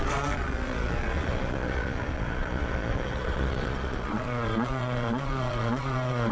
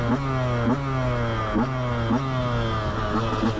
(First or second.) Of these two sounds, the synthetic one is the first